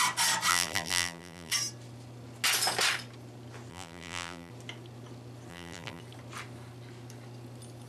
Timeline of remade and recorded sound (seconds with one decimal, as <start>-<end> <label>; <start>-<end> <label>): 0.0-0.5 recorded; 0.5-1.5 remade; 1.5-3.7 recorded; 3.7-4.5 remade; 4.5-5.5 recorded; 5.5-6.0 remade; 6.0-7.9 recorded